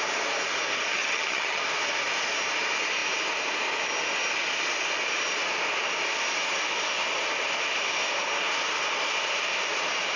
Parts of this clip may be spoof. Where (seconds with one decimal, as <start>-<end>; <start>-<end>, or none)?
0.9-1.6